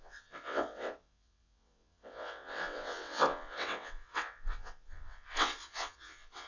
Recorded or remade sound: remade